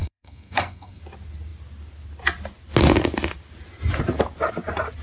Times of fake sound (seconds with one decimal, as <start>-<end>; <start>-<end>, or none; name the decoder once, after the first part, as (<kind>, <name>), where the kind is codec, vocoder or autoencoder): 0.0-1.0 (codec, SNAC)